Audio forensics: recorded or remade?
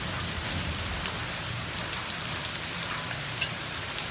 recorded